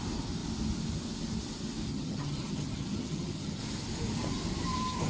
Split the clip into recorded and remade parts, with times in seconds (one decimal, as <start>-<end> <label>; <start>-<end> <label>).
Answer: 0.0-1.9 recorded; 1.9-3.6 remade; 3.6-5.1 recorded